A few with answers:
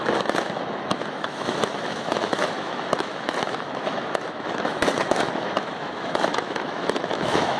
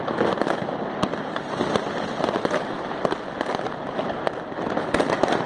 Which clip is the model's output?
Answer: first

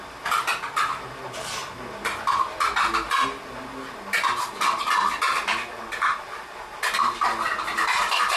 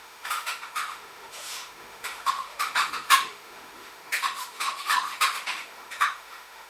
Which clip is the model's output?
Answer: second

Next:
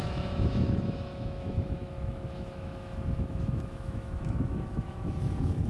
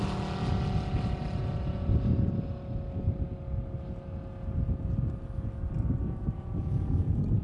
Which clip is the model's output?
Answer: first